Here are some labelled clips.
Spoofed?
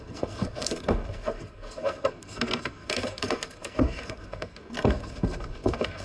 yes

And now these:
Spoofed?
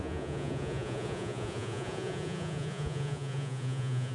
yes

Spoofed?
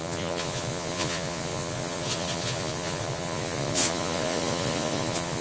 yes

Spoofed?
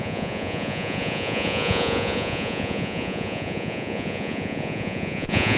yes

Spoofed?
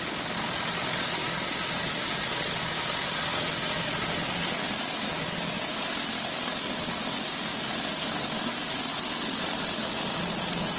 no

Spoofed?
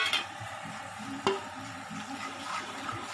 no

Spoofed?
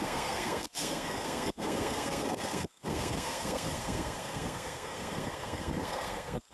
yes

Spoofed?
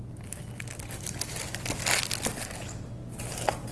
no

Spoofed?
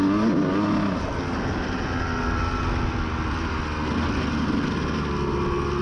no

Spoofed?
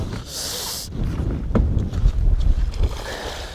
no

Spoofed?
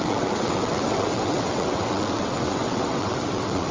yes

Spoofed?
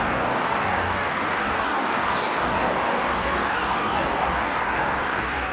yes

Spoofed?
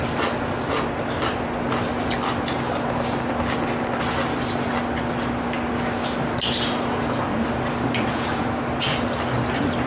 no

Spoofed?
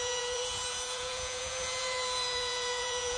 yes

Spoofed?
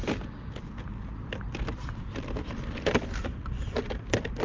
no